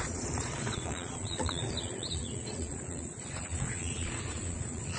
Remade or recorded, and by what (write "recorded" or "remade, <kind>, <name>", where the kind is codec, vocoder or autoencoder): remade, vocoder, Vocos